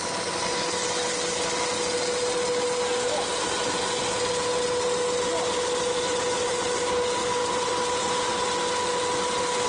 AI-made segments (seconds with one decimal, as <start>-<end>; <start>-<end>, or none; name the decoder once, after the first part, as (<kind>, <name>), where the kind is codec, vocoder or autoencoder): 7.4-8.3 (vocoder, BigVGAN v2)